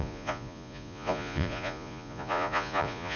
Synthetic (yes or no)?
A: yes